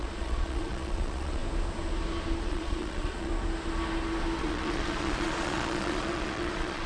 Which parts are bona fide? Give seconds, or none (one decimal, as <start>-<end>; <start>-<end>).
1.4-2.4; 3.3-4.4